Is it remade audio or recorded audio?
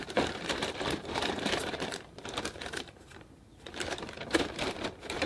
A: remade